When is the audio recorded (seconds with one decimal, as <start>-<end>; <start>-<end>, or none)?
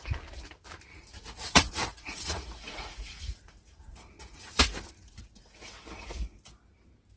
0.0-0.9; 4.6-7.2